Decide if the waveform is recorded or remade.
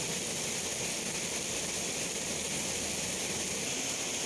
recorded